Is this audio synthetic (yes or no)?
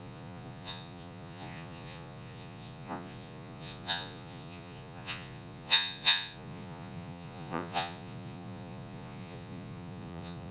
yes